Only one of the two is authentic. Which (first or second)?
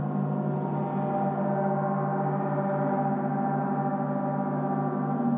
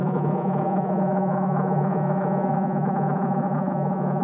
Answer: first